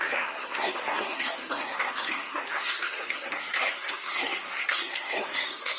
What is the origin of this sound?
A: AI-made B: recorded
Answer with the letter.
A